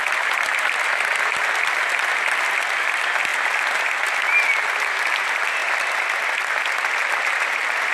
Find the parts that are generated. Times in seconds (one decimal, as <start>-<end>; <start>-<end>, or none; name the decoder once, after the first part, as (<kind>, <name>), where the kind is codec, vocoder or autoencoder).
none